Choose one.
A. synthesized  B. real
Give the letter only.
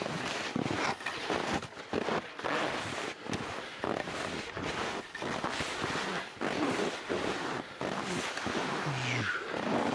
B